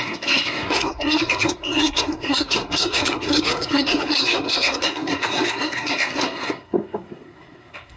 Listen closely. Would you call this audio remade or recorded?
remade